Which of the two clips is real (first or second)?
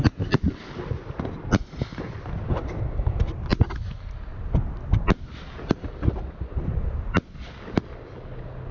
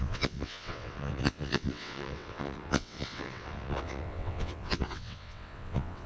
first